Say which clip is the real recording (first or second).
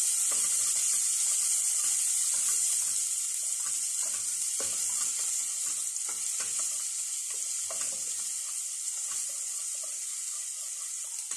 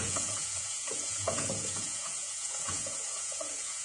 first